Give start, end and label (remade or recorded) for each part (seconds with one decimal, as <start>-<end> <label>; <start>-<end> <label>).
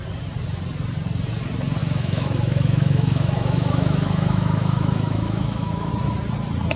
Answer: 0.0-1.8 recorded; 1.8-5.9 remade; 5.9-6.8 recorded